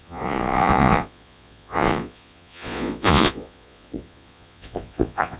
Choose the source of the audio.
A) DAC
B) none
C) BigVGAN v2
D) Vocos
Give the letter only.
D